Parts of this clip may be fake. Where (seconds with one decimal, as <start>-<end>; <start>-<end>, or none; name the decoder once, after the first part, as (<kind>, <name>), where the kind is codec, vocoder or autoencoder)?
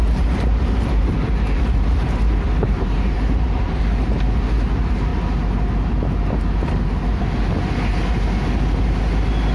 0.5-3.8 (vocoder, BigVGAN v2)